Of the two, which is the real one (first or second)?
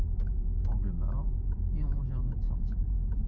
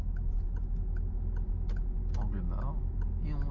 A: second